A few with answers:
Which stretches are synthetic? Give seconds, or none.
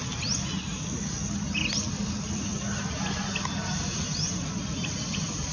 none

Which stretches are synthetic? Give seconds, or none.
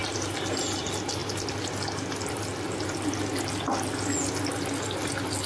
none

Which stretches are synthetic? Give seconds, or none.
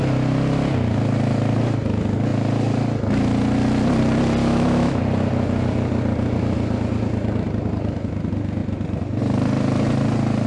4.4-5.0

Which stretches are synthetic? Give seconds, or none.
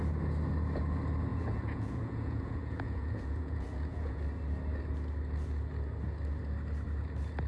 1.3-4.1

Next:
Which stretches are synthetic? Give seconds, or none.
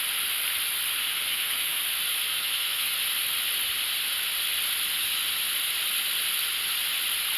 1.3-1.8; 2.3-2.9